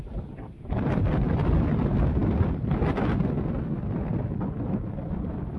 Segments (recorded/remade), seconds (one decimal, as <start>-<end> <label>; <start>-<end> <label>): 0.0-5.6 recorded